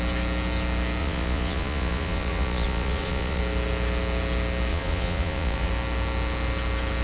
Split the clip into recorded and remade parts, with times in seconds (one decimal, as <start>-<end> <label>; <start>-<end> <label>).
0.0-1.0 recorded; 1.0-3.4 remade; 3.4-4.7 recorded; 4.7-5.7 remade; 5.7-7.0 recorded